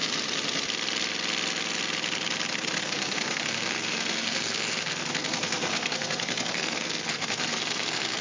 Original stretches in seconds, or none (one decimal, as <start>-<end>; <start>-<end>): 0.0-2.8